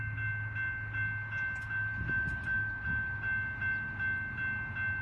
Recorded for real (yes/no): yes